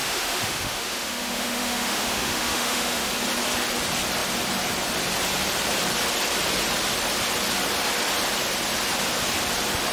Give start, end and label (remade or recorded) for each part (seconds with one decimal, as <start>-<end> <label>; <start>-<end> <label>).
0.0-3.1 remade; 3.1-9.9 recorded